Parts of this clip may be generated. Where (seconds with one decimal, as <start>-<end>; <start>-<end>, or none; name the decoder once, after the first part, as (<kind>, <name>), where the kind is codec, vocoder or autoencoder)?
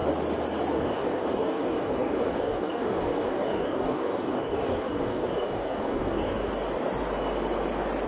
0.7-6.5 (codec, DAC)